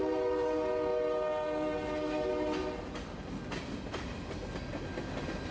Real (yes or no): yes